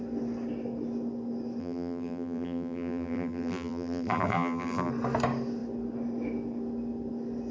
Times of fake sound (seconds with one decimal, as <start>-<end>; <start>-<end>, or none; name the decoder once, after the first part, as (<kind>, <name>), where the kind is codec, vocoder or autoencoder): 1.6-4.9 (vocoder, BigVGAN v2)